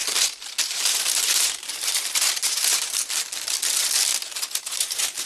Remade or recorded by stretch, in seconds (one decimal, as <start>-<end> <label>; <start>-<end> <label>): 0.0-3.1 remade; 3.1-4.1 recorded; 4.1-5.3 remade